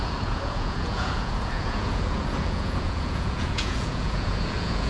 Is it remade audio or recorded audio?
remade